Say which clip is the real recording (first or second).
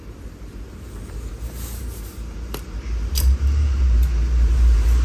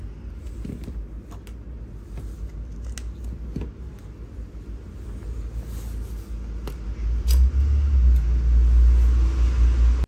second